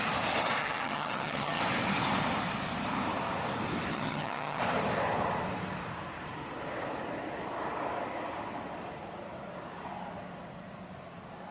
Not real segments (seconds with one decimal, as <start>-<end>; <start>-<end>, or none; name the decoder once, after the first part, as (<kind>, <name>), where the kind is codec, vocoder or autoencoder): 0.6-1.6 (vocoder, HiFi-GAN); 3.9-4.6